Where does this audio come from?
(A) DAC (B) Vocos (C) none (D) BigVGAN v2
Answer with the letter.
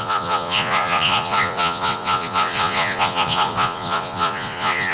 B